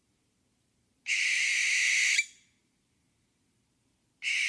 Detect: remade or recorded remade